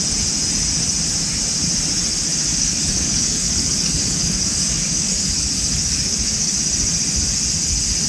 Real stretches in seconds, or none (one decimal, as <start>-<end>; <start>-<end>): 0.0-2.5; 6.6-8.1